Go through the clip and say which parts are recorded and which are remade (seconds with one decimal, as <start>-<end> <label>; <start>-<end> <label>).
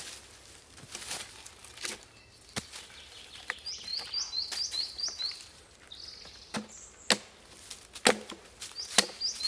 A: 0.0-9.5 recorded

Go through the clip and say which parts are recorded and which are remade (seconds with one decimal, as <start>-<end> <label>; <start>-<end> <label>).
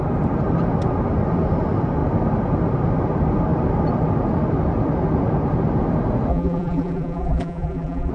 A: 0.0-6.3 recorded; 6.3-8.1 remade